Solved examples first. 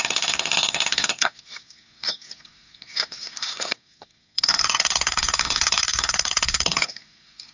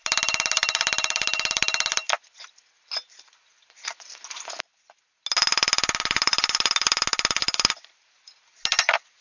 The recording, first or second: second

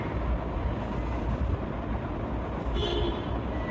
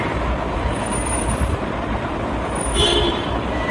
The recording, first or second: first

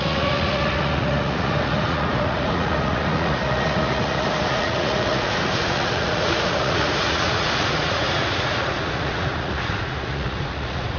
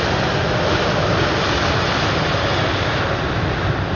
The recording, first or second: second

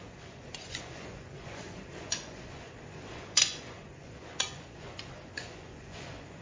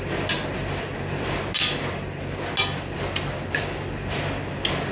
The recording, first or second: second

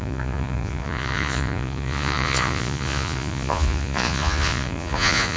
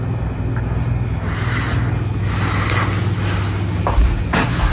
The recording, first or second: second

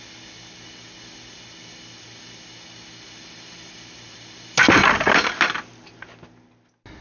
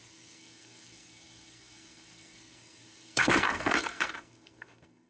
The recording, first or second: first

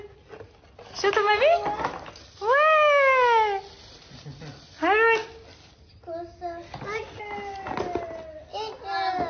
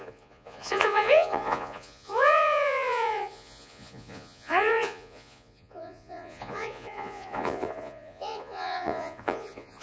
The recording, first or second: first